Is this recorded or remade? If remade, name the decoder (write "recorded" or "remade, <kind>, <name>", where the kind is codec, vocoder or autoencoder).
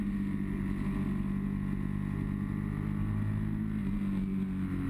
recorded